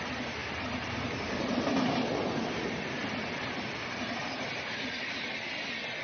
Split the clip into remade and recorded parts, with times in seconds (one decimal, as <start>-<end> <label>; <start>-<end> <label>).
0.0-0.4 recorded; 0.4-1.0 remade; 1.0-3.0 recorded; 3.0-4.2 remade; 4.2-6.0 recorded